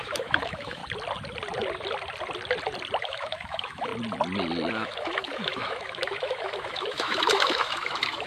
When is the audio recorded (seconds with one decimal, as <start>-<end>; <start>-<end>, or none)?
0.8-3.0; 3.9-4.7